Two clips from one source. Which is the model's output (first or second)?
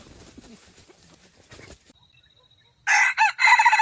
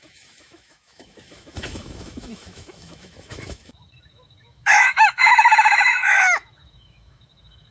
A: second